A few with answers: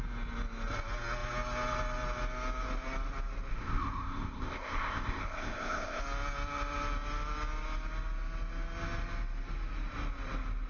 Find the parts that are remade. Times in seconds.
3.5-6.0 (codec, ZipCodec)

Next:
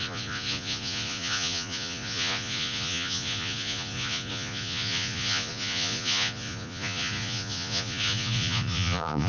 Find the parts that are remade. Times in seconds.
0.0-9.3 (vocoder, Vocos)

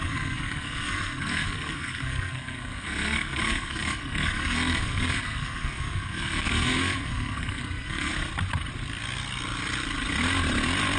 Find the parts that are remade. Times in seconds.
0.0-8.1 (codec, SNAC)

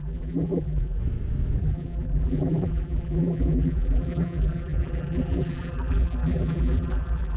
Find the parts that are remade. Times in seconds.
0.0-1.0 (vocoder, BigVGAN v2); 1.6-7.4

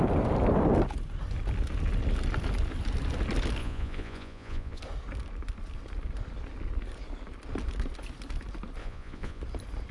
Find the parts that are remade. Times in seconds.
3.6-4.8 (vocoder, Vocos); 8.8-9.4

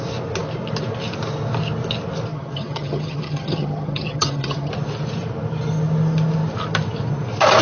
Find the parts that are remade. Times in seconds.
2.3-4.7 (vocoder, HiFi-GAN)

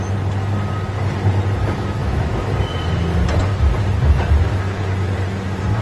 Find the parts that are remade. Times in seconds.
2.0-2.6 (autoencoder, DAC-VAE)

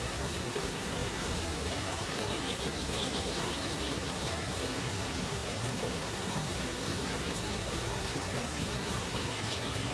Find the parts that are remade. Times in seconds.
0.0-9.9 (codec, SNAC)